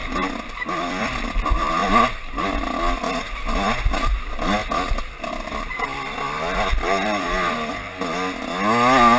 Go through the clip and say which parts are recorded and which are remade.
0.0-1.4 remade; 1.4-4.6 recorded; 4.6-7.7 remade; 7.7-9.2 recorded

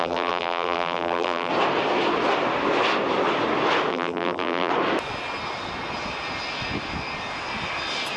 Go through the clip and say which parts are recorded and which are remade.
0.0-1.5 remade; 1.5-3.9 recorded; 3.9-4.7 remade; 4.7-8.2 recorded

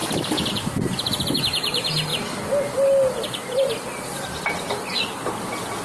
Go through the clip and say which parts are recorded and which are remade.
0.0-2.1 remade; 2.1-5.8 recorded

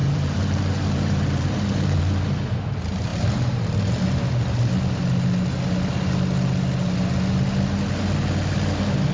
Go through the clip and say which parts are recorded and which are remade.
0.0-2.0 remade; 2.0-9.1 recorded

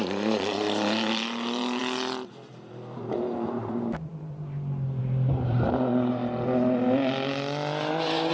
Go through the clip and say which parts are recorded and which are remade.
0.0-1.8 remade; 1.8-2.7 recorded; 2.7-4.1 remade; 4.1-5.0 recorded; 5.0-6.2 remade; 6.2-7.9 recorded; 7.9-8.3 remade

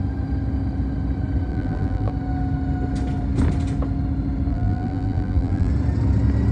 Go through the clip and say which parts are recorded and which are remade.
0.0-1.5 recorded; 1.5-2.1 remade; 2.1-4.5 recorded; 4.5-5.7 remade; 5.7-6.5 recorded

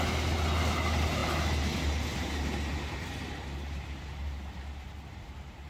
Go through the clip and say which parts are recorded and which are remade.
0.0-5.7 recorded